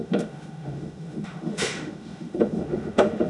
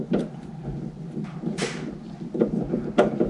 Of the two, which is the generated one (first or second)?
first